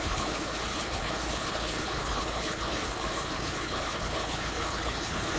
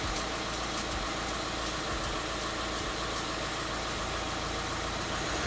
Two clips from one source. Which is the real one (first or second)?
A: second